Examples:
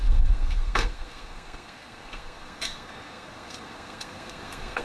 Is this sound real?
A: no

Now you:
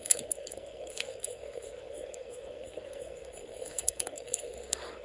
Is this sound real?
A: no